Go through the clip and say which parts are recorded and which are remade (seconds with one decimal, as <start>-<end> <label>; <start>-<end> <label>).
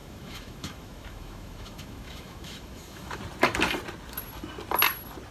0.0-3.2 remade; 3.2-5.3 recorded